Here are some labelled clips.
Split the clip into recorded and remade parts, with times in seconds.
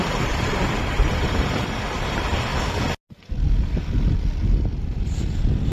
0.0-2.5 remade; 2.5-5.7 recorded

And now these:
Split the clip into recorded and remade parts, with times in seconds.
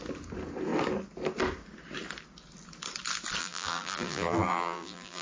0.0-3.4 recorded; 3.4-5.2 remade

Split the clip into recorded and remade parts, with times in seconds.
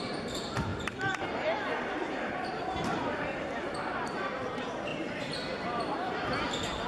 0.0-6.9 remade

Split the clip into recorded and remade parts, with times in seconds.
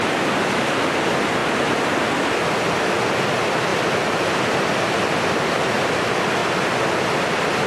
0.0-1.4 recorded; 1.4-1.9 remade; 1.9-7.7 recorded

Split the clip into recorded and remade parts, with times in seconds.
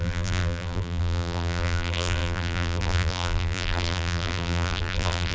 0.0-5.3 remade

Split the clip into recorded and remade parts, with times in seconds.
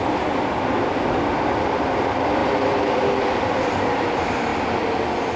0.0-5.4 recorded